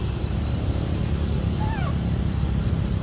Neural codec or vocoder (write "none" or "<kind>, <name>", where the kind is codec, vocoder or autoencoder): vocoder, BigVGAN v2